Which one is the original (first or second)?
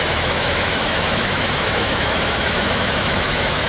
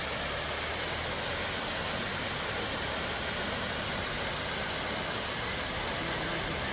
second